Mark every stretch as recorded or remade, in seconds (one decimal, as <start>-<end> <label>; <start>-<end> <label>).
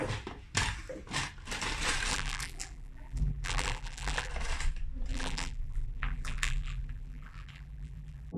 0.0-2.1 recorded; 2.1-4.3 remade; 4.3-5.1 recorded; 5.1-8.4 remade